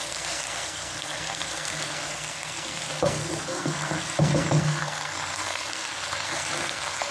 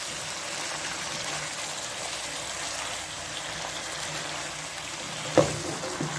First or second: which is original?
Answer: second